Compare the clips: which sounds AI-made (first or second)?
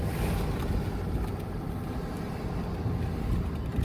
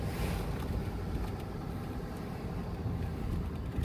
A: second